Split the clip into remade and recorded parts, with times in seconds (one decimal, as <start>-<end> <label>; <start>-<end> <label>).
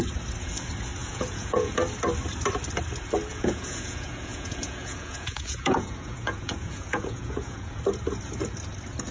0.0-1.0 recorded; 1.0-1.7 remade; 1.7-3.3 recorded; 3.3-7.8 remade; 7.8-9.1 recorded